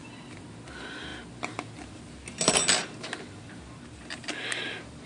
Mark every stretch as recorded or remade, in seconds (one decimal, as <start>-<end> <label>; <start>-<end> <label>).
0.0-5.1 recorded